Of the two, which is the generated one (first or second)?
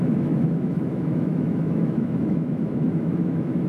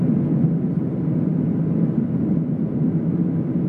first